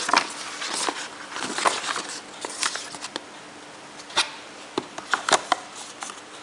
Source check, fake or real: real